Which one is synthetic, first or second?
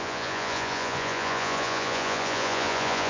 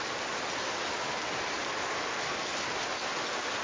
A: first